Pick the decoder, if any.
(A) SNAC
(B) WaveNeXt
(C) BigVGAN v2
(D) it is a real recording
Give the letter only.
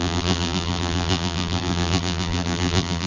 C